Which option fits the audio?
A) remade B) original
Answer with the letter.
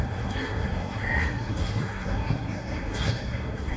A